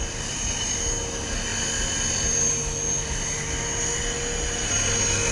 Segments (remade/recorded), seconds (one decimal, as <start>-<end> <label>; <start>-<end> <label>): 0.0-5.3 recorded